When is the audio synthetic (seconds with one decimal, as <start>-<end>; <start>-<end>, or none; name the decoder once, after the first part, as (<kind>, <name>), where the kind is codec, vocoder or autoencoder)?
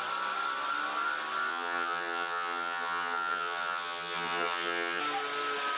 1.5-5.0 (vocoder, HiFi-GAN)